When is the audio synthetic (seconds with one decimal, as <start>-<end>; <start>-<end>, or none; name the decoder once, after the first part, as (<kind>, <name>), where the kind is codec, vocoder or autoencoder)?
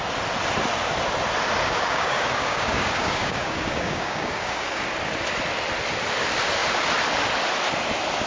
1.6-4.8 (codec, DAC)